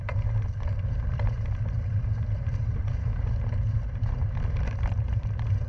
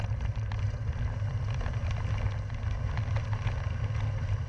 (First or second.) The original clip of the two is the second